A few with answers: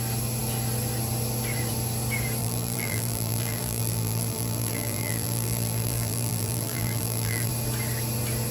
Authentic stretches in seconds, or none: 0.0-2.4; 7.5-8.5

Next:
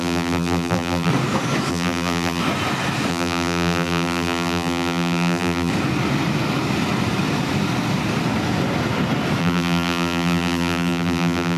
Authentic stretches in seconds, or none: 1.1-1.7; 2.4-3.1; 5.7-9.4

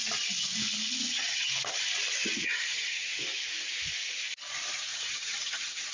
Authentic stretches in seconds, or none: 0.0-1.0; 1.5-2.5; 3.1-4.9

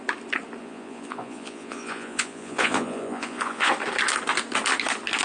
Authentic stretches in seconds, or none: 0.0-0.6; 3.7-5.2

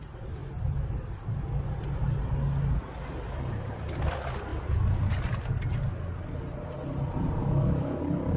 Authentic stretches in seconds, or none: 0.0-7.4; 8.0-8.4

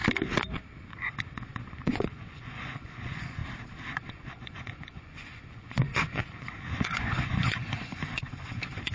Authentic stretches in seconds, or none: 0.0-0.9; 3.4-4.0

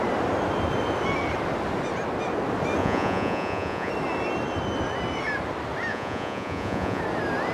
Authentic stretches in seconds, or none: 0.0-2.8; 3.9-5.9; 7.0-7.5